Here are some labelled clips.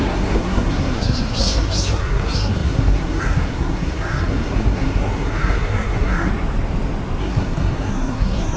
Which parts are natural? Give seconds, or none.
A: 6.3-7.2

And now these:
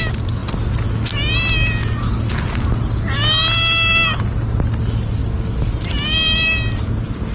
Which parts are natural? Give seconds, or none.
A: 0.0-7.3

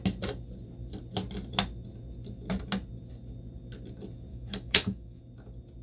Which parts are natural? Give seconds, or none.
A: 0.0-4.3; 5.2-5.8

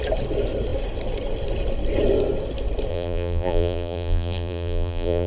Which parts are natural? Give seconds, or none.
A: 0.0-2.9

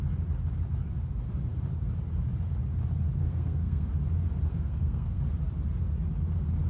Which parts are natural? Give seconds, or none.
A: 0.0-3.2; 3.9-4.5; 5.2-6.7

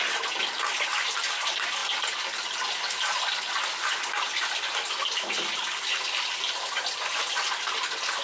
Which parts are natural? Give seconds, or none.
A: 0.0-8.2